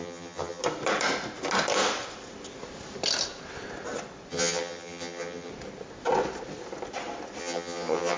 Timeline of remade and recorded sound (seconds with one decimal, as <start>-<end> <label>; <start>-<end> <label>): 0.0-0.6 remade; 0.6-4.3 recorded; 4.3-5.5 remade; 5.5-7.4 recorded; 7.4-8.2 remade

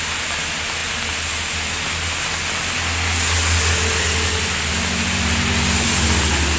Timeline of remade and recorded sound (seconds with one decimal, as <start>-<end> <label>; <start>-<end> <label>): 0.0-6.6 recorded